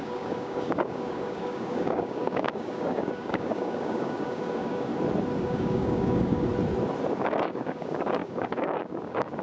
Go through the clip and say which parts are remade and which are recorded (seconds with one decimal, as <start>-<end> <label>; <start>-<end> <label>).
0.0-4.9 remade; 4.9-5.4 recorded; 5.4-6.5 remade; 6.5-7.1 recorded; 7.1-9.4 remade

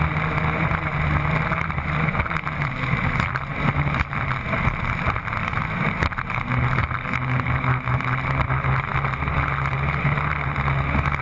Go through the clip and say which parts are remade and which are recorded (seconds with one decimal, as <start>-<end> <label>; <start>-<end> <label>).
0.0-11.2 recorded

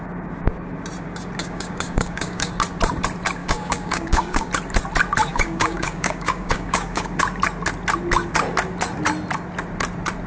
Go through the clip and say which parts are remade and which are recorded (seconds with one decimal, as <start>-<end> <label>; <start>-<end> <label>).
0.0-1.4 recorded; 1.4-2.5 remade; 2.5-3.4 recorded; 3.4-4.5 remade; 4.5-5.3 recorded; 5.3-7.2 remade; 7.2-10.3 recorded